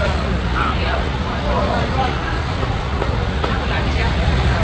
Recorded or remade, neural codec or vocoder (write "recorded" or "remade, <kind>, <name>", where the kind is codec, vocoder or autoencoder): remade, vocoder, Vocos